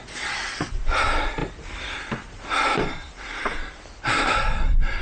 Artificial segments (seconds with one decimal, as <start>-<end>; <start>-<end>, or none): none